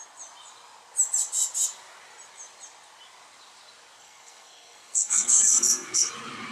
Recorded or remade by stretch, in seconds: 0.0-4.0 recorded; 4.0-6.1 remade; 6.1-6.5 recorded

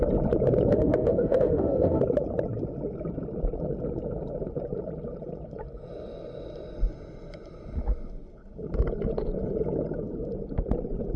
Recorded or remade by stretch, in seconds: 0.0-0.7 recorded; 0.7-2.0 remade; 2.0-11.2 recorded